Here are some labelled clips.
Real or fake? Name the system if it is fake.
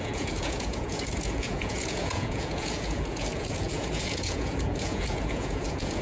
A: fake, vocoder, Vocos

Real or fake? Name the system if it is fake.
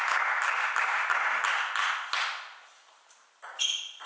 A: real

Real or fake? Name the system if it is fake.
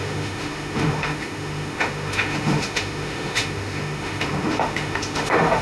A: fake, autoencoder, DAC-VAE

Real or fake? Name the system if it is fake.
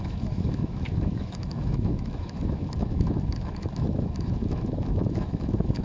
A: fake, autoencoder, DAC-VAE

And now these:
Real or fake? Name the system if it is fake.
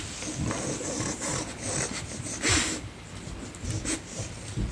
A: real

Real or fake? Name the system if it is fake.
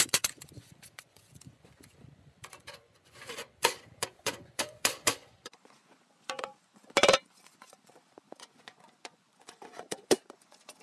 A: fake, vocoder, Vocos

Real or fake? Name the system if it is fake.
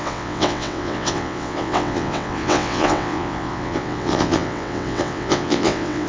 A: fake, vocoder, WaveNeXt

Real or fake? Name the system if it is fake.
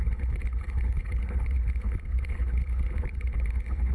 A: fake, codec, HILCodec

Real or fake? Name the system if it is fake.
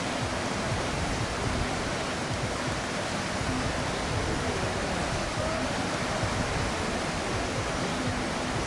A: real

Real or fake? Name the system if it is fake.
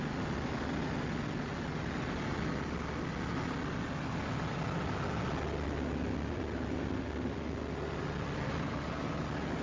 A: real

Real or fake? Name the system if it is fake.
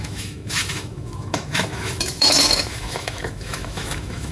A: fake, autoencoder, DAC-VAE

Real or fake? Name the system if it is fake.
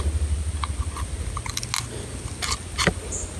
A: real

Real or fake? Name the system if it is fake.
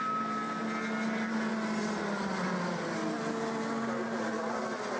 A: real